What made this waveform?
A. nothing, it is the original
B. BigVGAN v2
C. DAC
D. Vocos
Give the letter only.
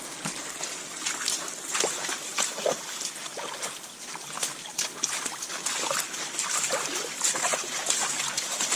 A